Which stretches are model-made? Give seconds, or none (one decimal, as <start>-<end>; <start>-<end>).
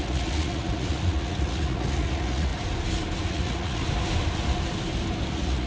0.0-2.5; 3.3-3.8; 5.3-5.7